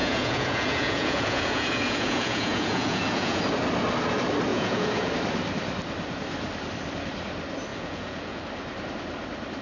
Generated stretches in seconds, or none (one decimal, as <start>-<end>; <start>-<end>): 0.0-3.4; 4.5-5.1; 7.7-8.4